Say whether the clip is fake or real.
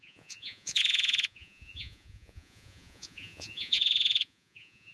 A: fake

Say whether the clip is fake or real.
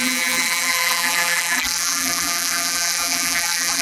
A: fake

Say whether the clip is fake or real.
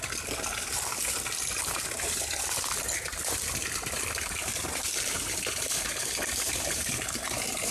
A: real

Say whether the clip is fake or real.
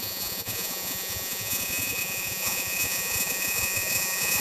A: fake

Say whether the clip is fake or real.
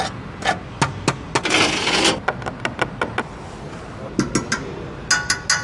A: real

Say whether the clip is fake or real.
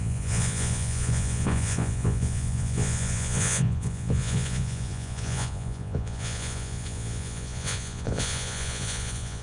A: fake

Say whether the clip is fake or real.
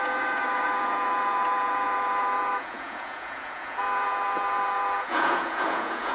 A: fake